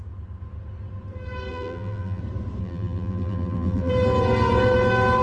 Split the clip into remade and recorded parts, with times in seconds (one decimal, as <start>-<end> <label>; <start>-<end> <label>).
0.0-1.5 recorded; 1.5-2.2 remade; 2.2-2.6 recorded; 2.6-3.9 remade; 3.9-5.2 recorded